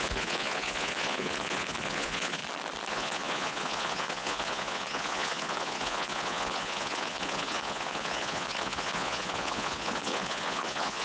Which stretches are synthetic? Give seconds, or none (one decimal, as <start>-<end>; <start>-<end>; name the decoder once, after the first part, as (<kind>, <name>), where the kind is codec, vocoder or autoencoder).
0.0-2.4 (vocoder, Vocos); 2.9-11.0